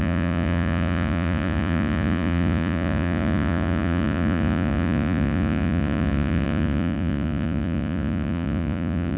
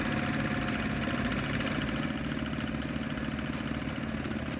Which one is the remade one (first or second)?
first